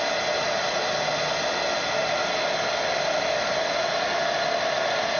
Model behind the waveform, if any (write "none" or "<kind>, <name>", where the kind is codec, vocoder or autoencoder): none